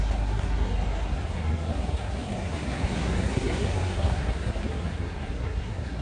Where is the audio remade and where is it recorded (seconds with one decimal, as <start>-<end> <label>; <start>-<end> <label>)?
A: 0.0-6.0 remade